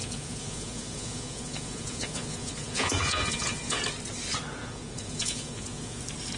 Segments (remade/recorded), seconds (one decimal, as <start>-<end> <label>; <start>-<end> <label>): 0.0-3.8 remade; 3.8-4.6 recorded; 4.6-6.0 remade; 6.0-6.4 recorded

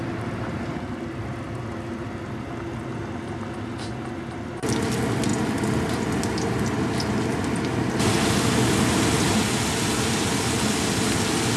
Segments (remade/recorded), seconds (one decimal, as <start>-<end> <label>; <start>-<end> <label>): 0.0-11.6 recorded

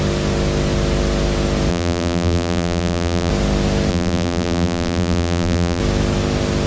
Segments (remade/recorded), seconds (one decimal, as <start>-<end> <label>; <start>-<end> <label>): 0.0-1.7 recorded; 1.7-3.3 remade; 3.3-3.9 recorded; 3.9-5.8 remade; 5.8-6.7 recorded

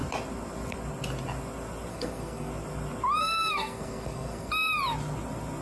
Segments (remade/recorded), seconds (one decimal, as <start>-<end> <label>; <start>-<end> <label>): 0.0-1.9 recorded; 1.9-2.5 remade; 2.5-3.2 recorded; 3.2-4.5 remade; 4.5-5.6 recorded

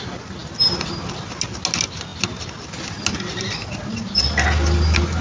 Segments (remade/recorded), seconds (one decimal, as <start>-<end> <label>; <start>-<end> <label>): 0.0-5.2 recorded

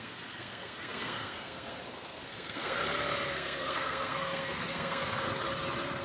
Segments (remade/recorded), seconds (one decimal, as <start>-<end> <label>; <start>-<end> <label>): 0.0-2.8 remade; 2.8-3.3 recorded; 3.3-5.3 remade; 5.3-6.0 recorded

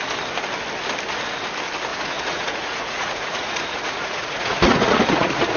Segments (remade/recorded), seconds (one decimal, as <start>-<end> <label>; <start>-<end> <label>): 0.0-1.9 recorded; 1.9-5.6 remade

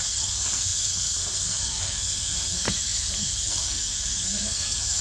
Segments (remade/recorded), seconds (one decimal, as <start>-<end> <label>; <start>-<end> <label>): 0.0-5.0 remade